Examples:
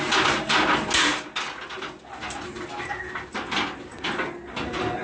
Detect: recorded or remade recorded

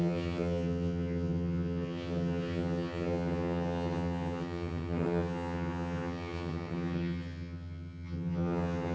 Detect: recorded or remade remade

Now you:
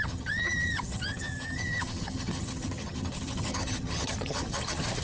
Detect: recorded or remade remade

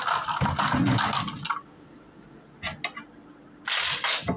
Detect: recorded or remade recorded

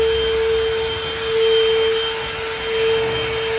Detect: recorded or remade recorded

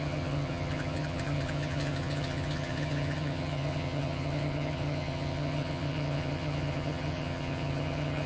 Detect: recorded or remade remade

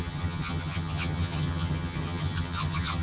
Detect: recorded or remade remade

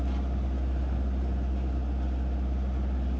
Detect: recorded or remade recorded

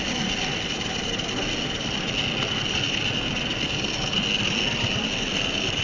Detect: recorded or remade recorded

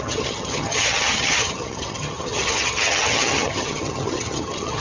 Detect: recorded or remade remade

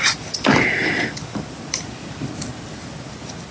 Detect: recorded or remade recorded